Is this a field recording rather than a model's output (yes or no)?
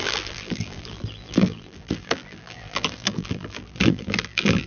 no